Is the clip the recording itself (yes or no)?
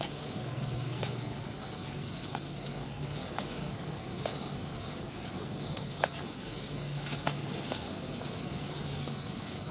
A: no